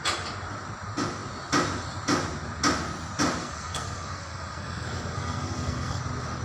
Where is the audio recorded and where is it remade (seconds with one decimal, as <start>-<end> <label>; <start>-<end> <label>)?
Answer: 0.0-3.4 recorded; 3.4-6.0 remade; 6.0-6.4 recorded